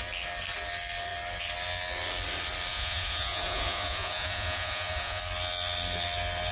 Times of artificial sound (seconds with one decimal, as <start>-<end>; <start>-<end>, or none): 2.7-5.2